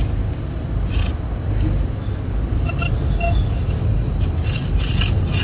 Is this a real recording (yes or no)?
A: yes